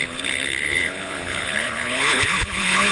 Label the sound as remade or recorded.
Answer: remade